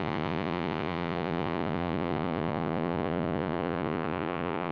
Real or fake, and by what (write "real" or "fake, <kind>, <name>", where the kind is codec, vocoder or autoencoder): fake, vocoder, Vocos